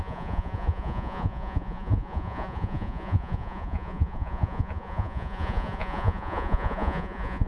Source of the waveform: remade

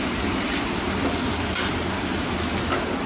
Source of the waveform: recorded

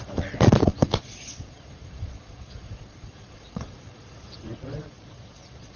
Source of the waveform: remade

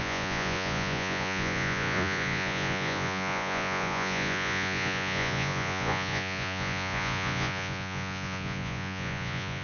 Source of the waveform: remade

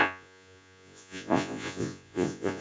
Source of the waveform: remade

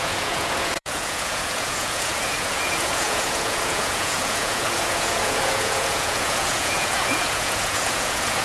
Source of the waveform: remade